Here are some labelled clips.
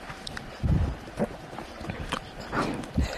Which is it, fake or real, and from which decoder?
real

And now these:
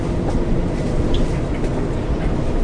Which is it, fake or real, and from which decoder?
real